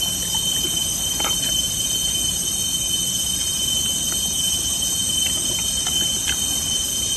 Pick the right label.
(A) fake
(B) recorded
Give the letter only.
B